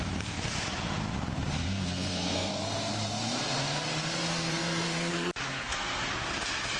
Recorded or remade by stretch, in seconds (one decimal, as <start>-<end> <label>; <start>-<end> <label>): 0.0-1.5 recorded; 1.5-2.5 remade; 2.5-4.3 recorded; 4.3-5.1 remade; 5.1-5.5 recorded; 5.5-6.1 remade; 6.1-6.8 recorded